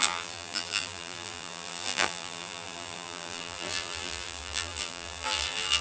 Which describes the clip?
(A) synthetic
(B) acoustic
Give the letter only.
A